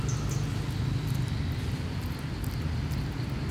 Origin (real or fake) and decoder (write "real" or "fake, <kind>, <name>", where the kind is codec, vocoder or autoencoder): real